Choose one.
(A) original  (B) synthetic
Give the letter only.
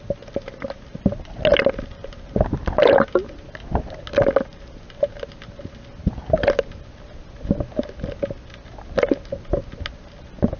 A